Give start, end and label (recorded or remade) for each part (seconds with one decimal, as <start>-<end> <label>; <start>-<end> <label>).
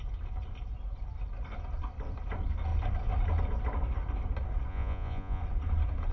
0.0-4.7 recorded; 4.7-5.4 remade; 5.4-6.1 recorded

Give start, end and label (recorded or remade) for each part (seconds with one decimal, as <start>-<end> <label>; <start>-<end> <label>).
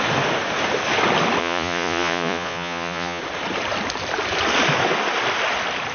0.0-1.4 recorded; 1.4-3.2 remade; 3.2-5.9 recorded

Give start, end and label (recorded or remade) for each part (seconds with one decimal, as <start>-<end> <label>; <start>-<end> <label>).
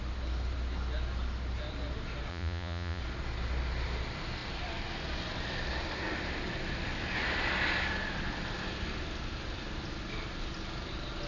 0.0-2.3 recorded; 2.3-3.0 remade; 3.0-11.3 recorded